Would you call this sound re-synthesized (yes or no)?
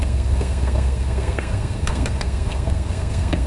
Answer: yes